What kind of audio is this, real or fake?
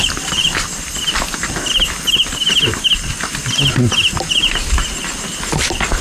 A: real